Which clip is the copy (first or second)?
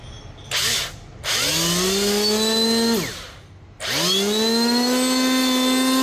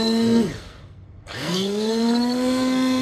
second